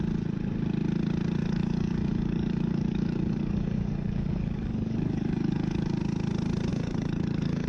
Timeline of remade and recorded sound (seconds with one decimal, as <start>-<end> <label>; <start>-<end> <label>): 0.0-1.4 recorded; 1.4-6.0 remade; 6.0-6.7 recorded; 6.7-7.7 remade